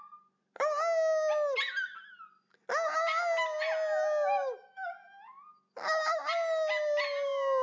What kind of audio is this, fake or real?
real